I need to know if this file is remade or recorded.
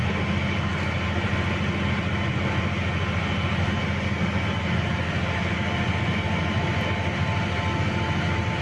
recorded